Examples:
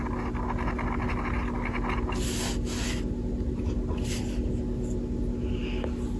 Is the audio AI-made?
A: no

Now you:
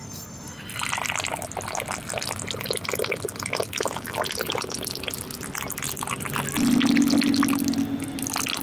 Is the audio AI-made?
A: no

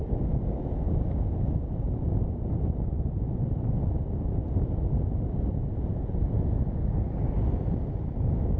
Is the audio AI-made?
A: no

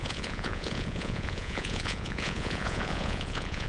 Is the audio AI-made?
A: yes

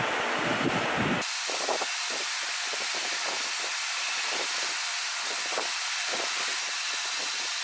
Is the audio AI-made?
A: no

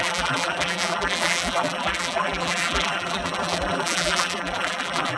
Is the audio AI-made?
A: yes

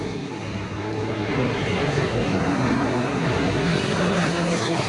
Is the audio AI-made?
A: yes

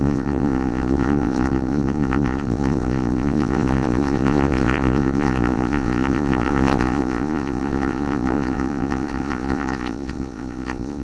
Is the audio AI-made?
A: yes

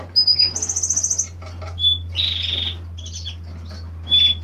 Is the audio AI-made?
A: no